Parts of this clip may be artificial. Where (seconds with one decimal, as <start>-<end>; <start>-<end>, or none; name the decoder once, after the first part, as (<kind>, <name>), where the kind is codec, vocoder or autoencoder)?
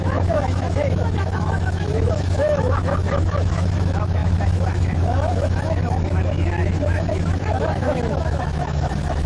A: 0.0-9.3 (autoencoder, DAC-VAE)